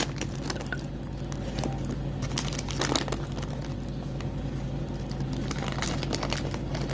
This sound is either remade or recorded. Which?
recorded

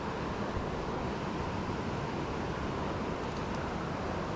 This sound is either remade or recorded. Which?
recorded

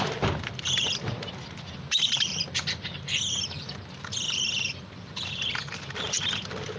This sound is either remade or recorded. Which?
recorded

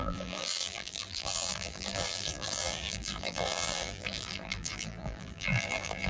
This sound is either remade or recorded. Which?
remade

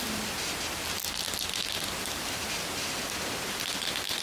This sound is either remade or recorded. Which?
recorded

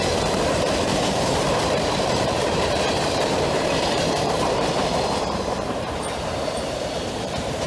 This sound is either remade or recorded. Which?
remade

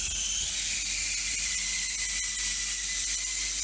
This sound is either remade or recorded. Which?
recorded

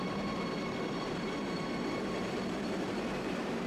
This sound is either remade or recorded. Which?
remade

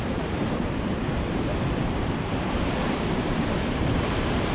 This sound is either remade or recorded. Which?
remade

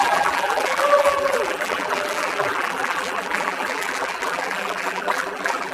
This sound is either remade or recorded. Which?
remade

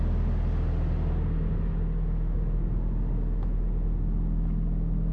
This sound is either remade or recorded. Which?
recorded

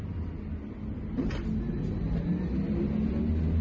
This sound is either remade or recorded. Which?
recorded